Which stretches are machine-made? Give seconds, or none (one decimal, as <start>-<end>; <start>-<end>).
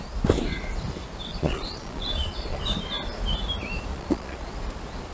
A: 1.3-2.6; 3.9-4.5